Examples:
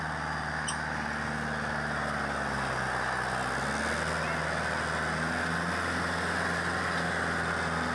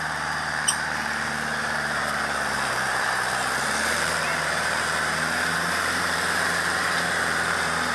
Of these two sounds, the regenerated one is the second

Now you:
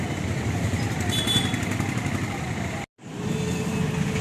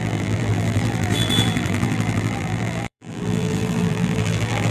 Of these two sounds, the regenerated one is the second